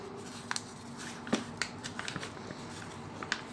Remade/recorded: recorded